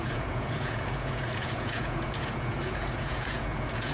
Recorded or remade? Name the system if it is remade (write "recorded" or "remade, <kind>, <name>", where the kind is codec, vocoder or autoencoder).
remade, vocoder, Vocos